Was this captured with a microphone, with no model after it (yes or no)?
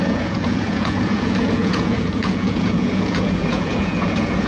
no